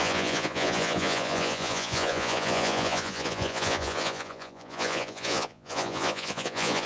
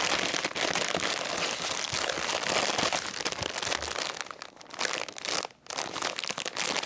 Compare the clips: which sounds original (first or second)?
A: second